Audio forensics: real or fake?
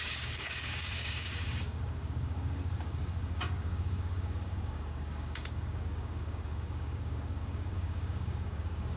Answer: fake